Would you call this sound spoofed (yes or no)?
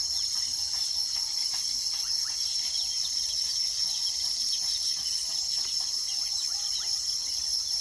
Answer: no